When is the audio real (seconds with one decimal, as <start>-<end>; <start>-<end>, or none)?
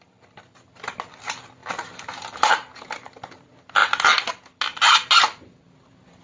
0.0-6.2